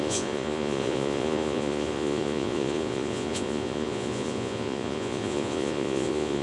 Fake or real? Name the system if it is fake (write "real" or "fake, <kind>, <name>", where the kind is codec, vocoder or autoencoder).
fake, vocoder, Vocos